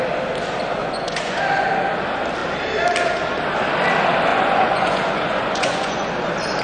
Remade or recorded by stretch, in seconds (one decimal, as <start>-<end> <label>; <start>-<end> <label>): 0.0-0.8 recorded; 0.8-1.4 remade; 1.4-4.3 recorded; 4.3-6.1 remade; 6.1-6.6 recorded